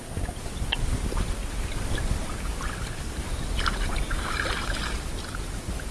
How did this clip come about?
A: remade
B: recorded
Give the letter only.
B